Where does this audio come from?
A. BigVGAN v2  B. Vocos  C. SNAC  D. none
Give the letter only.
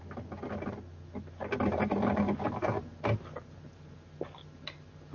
D